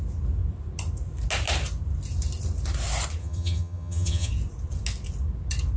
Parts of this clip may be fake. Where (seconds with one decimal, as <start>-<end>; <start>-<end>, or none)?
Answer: 3.2-4.3